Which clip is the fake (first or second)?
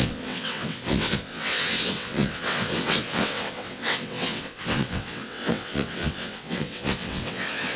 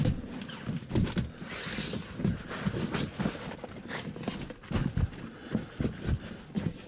first